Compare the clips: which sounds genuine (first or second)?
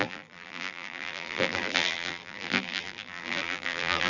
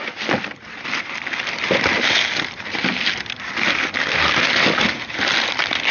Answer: second